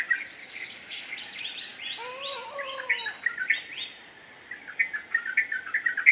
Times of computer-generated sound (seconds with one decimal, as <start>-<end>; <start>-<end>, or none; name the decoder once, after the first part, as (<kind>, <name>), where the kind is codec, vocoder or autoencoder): 0.4-1.1 (codec, DAC)